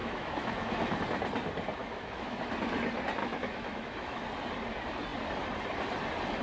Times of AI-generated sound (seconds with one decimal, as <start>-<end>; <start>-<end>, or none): 0.0-1.0; 1.8-2.4; 3.2-4.2